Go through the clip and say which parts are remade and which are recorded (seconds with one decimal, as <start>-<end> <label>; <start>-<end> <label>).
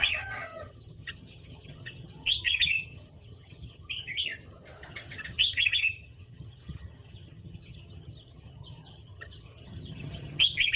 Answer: 0.0-4.3 remade; 4.3-4.9 recorded; 4.9-10.8 remade